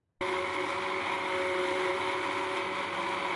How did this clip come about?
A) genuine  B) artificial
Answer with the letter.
A